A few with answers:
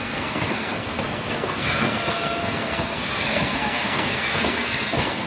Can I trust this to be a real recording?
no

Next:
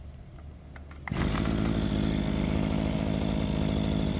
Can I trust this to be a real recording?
yes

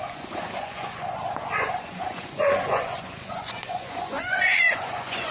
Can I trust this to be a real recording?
no